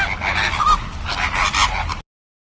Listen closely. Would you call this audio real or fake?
real